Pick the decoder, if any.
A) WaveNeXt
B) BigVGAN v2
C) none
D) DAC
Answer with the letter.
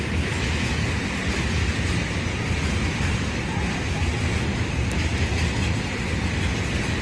C